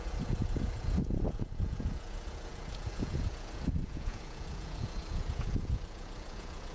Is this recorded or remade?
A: remade